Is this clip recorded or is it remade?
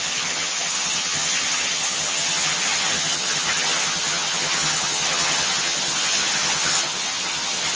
remade